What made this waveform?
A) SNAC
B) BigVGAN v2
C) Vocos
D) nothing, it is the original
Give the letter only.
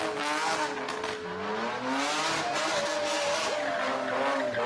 D